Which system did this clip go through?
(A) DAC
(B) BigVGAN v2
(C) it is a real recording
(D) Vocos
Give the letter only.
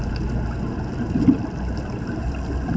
C